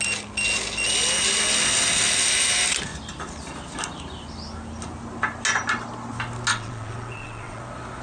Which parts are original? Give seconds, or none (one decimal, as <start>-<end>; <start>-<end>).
0.0-6.5; 7.6-8.0